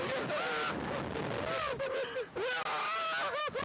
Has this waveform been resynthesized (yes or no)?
no